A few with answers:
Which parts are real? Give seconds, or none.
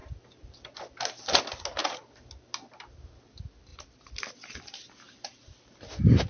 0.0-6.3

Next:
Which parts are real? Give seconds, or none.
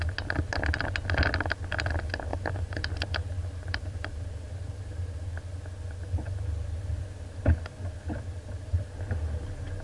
0.0-2.3; 5.3-9.8